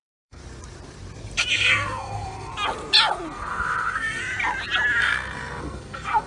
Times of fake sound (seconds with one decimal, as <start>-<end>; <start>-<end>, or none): 0.0-0.4; 1.5-2.5; 3.3-4.2; 5.0-6.3